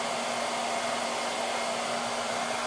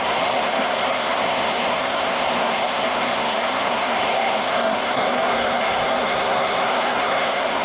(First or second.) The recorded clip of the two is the first